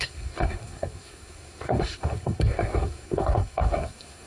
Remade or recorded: remade